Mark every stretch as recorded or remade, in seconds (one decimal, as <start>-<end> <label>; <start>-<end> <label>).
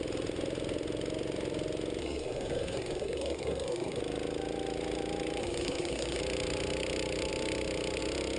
0.0-2.0 recorded; 2.0-4.0 remade; 4.0-5.4 recorded; 5.4-6.2 remade; 6.2-8.4 recorded